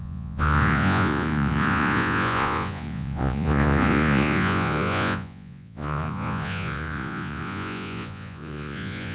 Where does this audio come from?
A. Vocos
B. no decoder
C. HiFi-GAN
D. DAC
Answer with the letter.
A